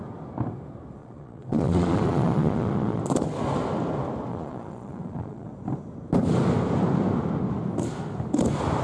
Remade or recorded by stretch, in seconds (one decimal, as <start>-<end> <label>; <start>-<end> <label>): 0.0-1.0 recorded; 1.0-3.0 remade; 3.0-4.3 recorded; 4.3-5.5 remade; 5.5-8.8 recorded

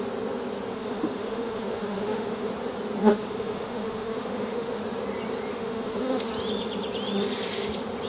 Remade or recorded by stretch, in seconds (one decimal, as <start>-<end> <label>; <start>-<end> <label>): 0.0-0.7 recorded; 0.7-2.5 remade; 2.5-3.0 recorded; 3.0-4.8 remade; 4.8-5.5 recorded; 5.5-6.3 remade; 6.3-8.1 recorded

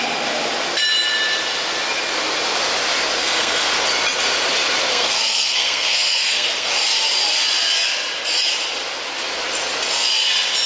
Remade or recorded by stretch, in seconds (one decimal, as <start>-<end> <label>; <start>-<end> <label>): 0.0-3.2 recorded; 3.2-3.7 remade; 3.7-4.9 recorded; 4.9-6.7 remade; 6.7-10.7 recorded

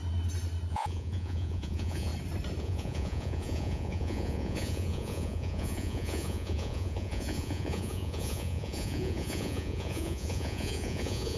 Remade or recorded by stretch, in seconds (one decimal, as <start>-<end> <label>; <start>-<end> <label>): 0.0-0.7 recorded; 0.7-2.1 remade; 2.1-2.6 recorded; 2.6-11.4 remade

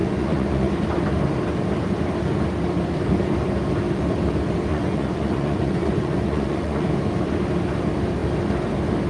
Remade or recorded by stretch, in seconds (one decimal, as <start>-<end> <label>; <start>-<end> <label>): 0.0-0.7 remade; 0.7-4.7 recorded; 4.7-6.9 remade; 6.9-9.1 recorded

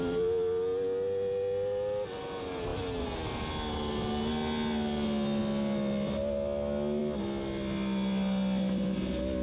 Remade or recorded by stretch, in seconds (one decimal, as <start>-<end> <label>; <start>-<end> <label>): 0.0-9.4 recorded

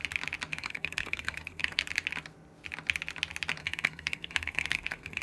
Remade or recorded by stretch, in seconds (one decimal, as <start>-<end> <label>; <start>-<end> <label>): 0.0-0.5 recorded; 0.5-1.8 remade; 1.8-3.6 recorded; 3.6-5.2 remade

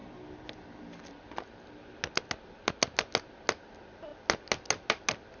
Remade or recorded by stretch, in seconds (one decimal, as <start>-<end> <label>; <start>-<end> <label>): 0.0-5.4 recorded